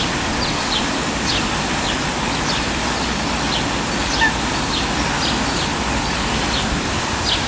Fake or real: real